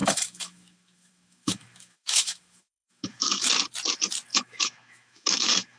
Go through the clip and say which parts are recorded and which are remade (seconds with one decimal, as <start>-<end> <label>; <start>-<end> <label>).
0.0-3.5 remade; 3.5-4.3 recorded; 4.3-5.8 remade

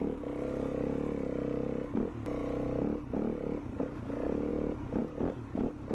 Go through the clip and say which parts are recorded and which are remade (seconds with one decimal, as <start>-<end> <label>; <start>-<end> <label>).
0.0-5.9 recorded

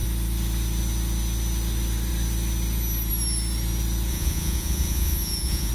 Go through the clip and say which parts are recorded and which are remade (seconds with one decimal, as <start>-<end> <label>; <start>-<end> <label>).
0.0-4.1 recorded; 4.1-5.7 remade

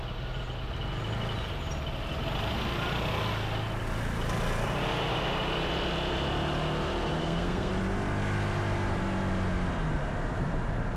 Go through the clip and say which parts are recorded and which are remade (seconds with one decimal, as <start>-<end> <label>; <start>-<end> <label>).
0.0-7.2 recorded; 7.2-7.7 remade; 7.7-11.0 recorded

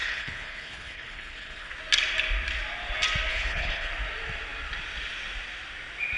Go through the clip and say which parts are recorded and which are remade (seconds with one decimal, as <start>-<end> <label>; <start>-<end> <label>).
0.0-1.7 remade; 1.7-3.3 recorded; 3.3-3.9 remade; 3.9-6.2 recorded

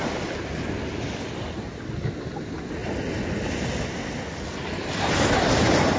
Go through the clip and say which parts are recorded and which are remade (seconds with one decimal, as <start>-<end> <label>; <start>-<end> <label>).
0.0-6.0 recorded

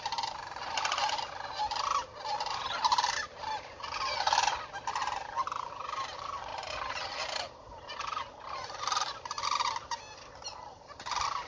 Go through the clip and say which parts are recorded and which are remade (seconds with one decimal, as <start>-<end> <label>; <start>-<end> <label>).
0.0-11.5 remade

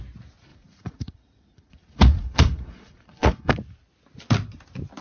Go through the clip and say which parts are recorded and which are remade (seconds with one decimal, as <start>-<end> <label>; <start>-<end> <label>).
0.0-0.5 recorded; 0.5-3.5 remade; 3.5-5.0 recorded